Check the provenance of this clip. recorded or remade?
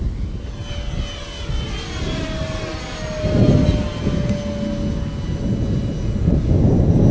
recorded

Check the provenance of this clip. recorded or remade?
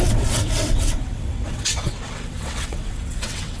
remade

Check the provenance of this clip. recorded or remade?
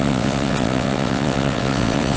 remade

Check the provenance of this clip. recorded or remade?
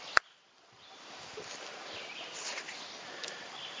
recorded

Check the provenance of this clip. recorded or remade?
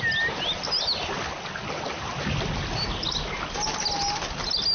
recorded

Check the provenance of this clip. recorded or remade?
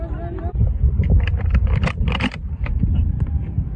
recorded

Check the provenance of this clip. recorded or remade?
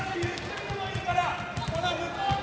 recorded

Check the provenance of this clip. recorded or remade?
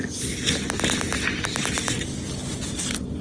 recorded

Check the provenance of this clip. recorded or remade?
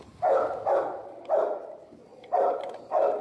recorded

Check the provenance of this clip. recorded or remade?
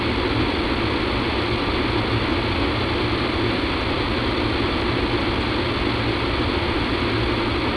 recorded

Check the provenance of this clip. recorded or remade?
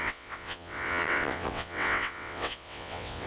remade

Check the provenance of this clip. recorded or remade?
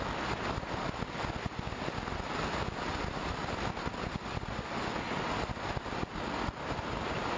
recorded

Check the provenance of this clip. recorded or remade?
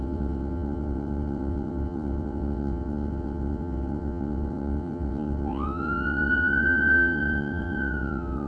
remade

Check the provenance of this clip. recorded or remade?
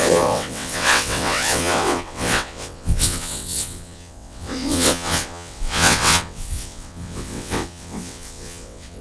remade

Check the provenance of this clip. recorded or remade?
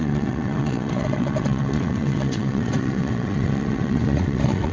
remade